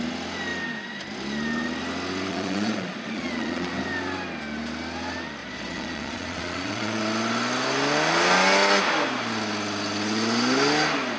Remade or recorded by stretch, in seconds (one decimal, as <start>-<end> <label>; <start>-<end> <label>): 0.0-2.3 recorded; 2.3-3.7 remade; 3.7-5.4 recorded; 5.4-7.0 remade; 7.0-11.2 recorded